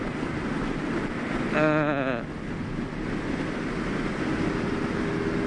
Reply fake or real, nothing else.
real